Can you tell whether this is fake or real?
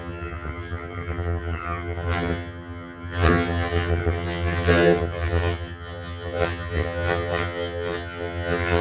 fake